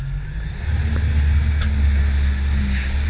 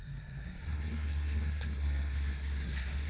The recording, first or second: first